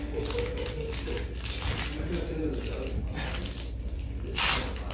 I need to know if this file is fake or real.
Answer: real